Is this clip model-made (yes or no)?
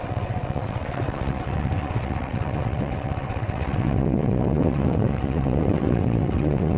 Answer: yes